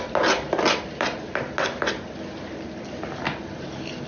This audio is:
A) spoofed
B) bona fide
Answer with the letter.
B